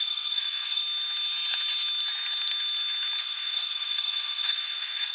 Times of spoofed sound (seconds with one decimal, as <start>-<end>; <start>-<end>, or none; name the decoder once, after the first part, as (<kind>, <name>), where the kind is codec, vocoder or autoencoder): 0.0-0.8 (codec, SNAC); 3.2-5.1